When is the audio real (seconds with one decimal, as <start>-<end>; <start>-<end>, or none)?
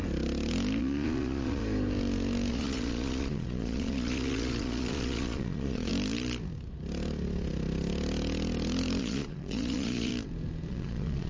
0.0-0.8; 1.6-2.5; 5.9-9.0; 10.1-10.7